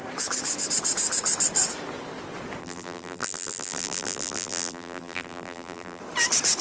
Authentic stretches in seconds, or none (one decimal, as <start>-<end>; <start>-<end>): 0.0-2.6; 6.0-6.6